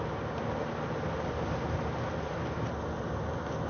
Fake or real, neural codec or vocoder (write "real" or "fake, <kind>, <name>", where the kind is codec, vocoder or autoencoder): real